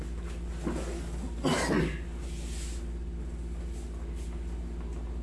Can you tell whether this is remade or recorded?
recorded